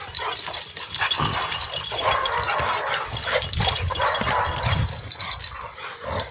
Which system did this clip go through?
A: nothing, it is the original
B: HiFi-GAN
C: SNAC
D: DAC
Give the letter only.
A